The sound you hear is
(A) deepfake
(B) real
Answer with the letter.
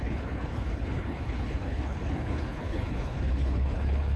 A